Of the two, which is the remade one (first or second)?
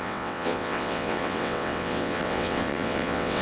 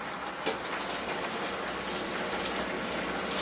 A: first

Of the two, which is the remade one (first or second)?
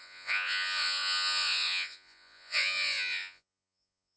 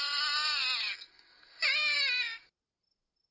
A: first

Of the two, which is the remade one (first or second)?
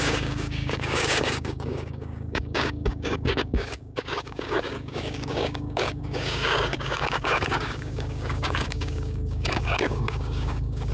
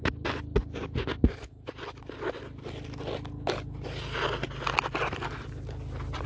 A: first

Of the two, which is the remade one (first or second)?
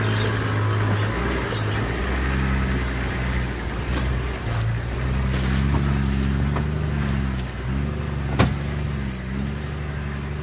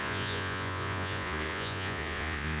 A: second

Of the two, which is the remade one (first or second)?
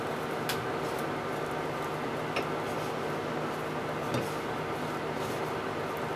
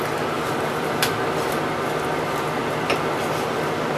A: second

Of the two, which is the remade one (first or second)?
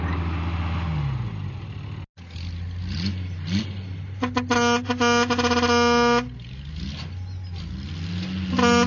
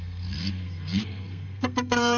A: second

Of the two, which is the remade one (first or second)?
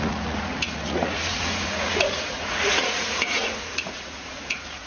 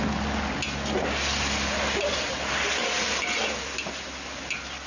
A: first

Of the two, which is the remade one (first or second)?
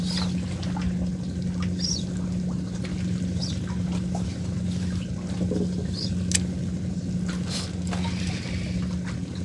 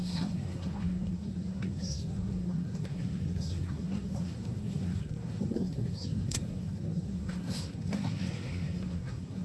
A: second